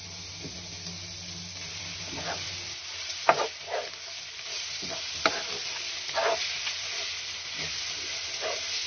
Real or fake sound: real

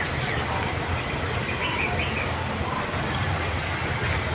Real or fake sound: real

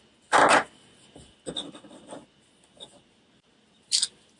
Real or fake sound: real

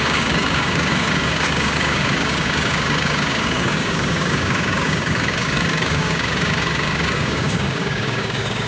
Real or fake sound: fake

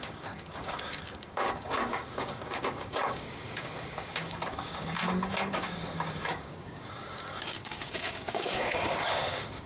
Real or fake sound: fake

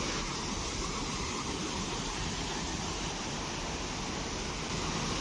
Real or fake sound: real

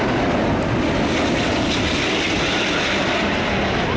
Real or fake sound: real